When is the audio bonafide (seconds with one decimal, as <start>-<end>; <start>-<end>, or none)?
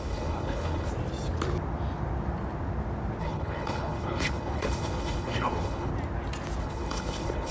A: 0.9-3.2; 5.9-6.6